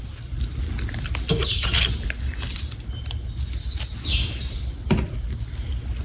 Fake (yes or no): no